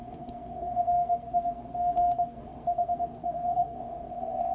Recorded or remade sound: remade